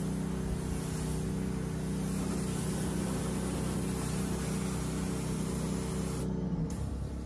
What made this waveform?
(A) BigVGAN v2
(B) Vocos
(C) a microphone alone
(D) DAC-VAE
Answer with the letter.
C